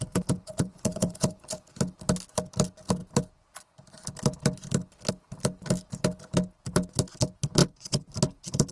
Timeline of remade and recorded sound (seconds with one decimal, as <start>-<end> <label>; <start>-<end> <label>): 0.0-0.4 recorded; 0.4-1.6 remade; 1.6-7.6 recorded; 7.6-8.1 remade; 8.1-8.7 recorded